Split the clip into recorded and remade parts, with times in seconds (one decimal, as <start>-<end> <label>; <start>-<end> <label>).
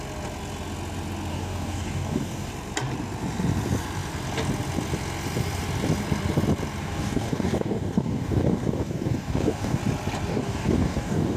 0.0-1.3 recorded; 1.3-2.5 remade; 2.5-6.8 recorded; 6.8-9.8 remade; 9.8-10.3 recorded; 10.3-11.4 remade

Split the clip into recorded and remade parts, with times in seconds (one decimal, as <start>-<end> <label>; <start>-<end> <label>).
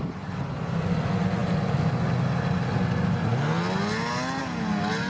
0.0-5.1 recorded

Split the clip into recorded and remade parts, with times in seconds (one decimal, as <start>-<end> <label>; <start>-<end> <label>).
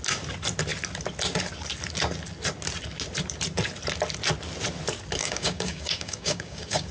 0.0-5.2 recorded; 5.2-6.9 remade